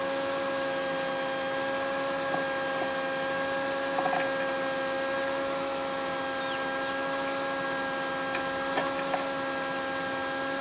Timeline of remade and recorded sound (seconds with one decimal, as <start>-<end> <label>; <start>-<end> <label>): 0.0-8.8 recorded; 8.8-10.6 remade